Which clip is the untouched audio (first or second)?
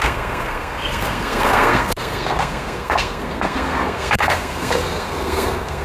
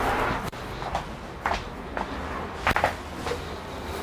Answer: second